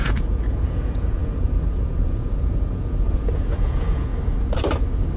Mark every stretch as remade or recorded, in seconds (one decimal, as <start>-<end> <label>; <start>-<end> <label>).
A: 0.0-4.1 remade; 4.1-5.2 recorded